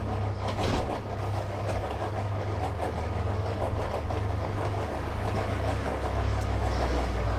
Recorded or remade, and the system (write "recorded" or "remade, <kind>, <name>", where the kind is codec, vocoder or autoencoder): remade, codec, DAC